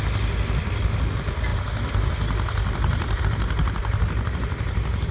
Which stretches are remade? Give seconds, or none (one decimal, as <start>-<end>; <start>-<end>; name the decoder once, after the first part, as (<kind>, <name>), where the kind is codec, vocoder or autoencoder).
none